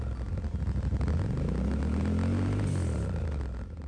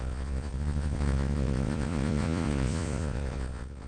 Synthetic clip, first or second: second